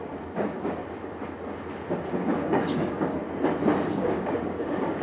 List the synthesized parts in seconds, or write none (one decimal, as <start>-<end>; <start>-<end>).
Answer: 0.0-0.8; 2.1-3.2; 3.9-5.0